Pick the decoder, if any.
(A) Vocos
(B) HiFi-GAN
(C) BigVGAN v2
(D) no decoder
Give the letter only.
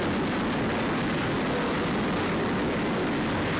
D